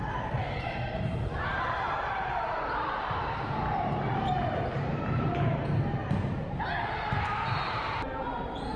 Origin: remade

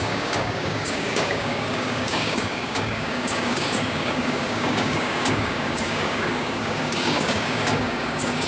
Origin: remade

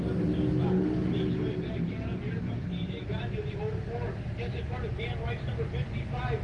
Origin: recorded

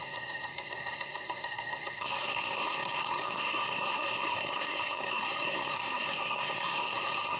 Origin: remade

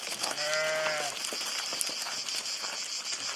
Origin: recorded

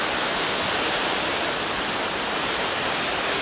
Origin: recorded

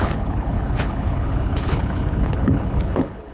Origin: remade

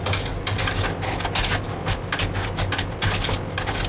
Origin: recorded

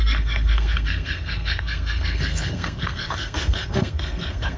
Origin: remade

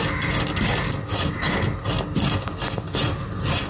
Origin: recorded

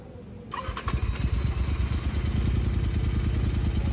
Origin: recorded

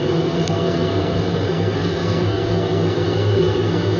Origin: remade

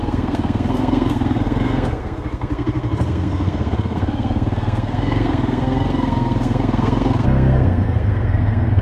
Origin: remade